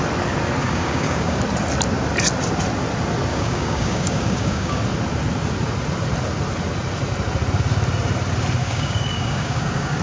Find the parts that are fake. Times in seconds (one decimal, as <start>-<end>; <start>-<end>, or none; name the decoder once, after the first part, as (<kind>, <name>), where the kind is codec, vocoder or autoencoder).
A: 0.6-1.4 (codec, DAC); 3.3-4.8; 8.6-10.0